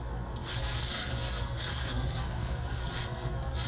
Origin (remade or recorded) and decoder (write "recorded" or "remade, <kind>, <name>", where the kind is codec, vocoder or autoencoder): remade, codec, SNAC